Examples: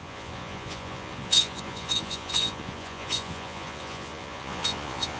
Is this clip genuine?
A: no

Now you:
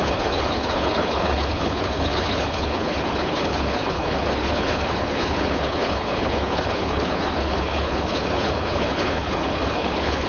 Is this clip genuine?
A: no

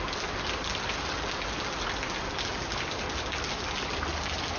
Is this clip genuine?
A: yes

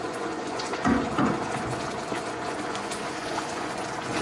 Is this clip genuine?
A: no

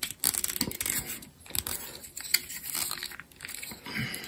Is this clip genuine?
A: yes